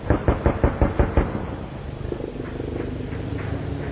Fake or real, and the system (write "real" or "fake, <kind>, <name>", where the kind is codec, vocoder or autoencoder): real